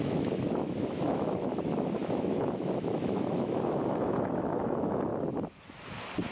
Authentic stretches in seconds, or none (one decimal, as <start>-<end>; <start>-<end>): 5.1-6.3